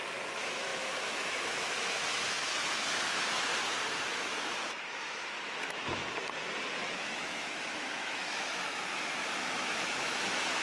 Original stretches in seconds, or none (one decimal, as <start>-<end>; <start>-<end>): 3.5-4.2; 6.0-6.9